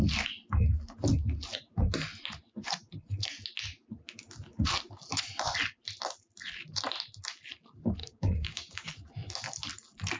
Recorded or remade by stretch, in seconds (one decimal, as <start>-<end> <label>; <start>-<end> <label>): 0.0-8.0 recorded; 8.0-8.9 remade; 8.9-10.2 recorded